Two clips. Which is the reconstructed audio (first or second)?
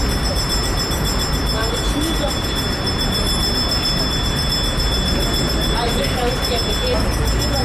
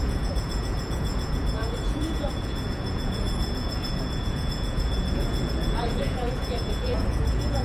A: second